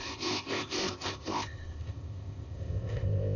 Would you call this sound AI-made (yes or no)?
yes